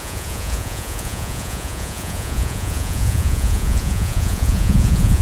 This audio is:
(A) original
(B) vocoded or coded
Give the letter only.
B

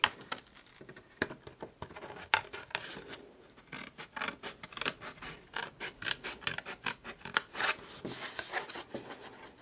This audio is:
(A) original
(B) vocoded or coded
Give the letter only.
A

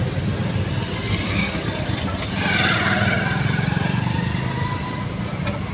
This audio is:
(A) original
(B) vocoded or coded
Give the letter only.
A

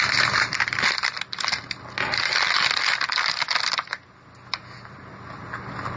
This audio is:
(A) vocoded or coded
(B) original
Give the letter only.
B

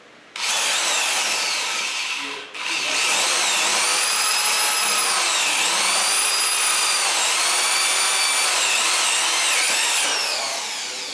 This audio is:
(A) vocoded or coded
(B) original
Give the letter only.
B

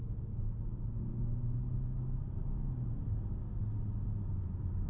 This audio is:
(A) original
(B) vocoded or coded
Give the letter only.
A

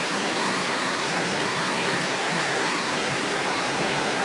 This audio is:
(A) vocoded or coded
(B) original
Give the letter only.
A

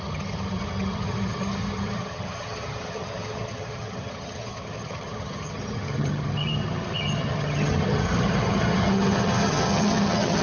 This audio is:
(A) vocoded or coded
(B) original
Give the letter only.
A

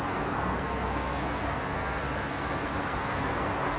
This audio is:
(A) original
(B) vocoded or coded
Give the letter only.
B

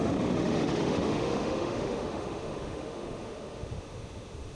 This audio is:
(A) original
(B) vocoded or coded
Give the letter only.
B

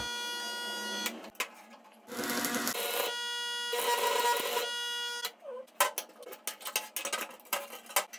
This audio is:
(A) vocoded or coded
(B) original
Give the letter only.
B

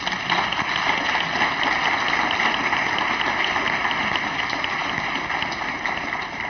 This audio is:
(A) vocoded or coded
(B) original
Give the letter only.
B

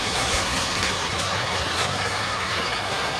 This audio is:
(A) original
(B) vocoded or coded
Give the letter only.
B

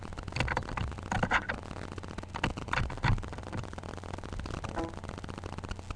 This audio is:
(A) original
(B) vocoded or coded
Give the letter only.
A